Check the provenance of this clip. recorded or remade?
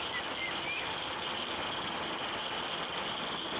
recorded